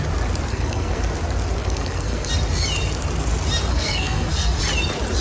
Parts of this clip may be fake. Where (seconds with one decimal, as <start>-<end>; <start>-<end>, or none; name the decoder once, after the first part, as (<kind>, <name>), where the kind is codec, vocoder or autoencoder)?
0.5-1.0 (codec, SNAC); 1.6-2.3; 3.7-4.6